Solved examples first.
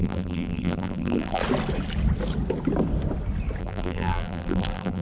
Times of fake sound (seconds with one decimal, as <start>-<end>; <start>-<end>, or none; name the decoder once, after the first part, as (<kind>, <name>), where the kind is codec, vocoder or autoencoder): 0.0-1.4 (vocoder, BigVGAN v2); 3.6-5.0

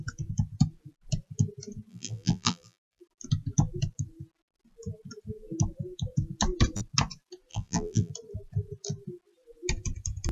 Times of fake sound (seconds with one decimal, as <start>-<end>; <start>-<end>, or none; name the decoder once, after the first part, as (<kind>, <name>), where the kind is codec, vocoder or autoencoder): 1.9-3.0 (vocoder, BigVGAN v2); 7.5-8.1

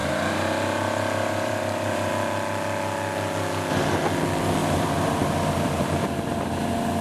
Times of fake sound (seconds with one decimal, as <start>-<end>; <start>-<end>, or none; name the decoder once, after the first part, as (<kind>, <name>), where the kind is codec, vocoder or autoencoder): 0.0-2.1 (vocoder, BigVGAN v2); 4.6-6.4

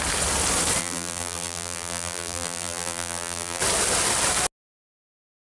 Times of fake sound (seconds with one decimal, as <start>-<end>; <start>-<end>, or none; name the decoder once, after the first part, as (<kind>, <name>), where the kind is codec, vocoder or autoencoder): 0.8-3.6 (vocoder, BigVGAN v2)

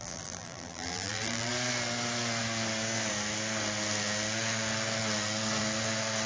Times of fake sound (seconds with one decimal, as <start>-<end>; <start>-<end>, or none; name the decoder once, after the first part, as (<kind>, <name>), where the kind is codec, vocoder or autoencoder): 0.0-1.5 (vocoder, BigVGAN v2)

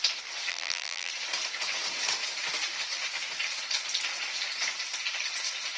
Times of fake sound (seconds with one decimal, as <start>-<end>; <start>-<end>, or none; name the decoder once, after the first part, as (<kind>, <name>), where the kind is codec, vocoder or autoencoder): 0.5-1.1 (vocoder, BigVGAN v2)

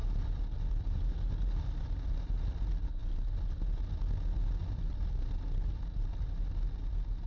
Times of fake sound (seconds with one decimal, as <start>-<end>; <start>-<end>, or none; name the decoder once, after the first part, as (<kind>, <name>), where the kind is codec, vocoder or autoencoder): 2.2-3.0 (vocoder, BigVGAN v2)